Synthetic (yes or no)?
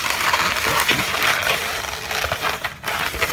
no